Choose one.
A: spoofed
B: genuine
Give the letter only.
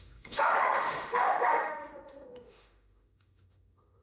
A